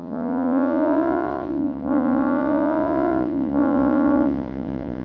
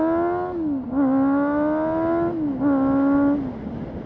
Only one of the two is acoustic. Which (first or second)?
second